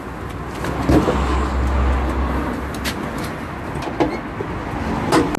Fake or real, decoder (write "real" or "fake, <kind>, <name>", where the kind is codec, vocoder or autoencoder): real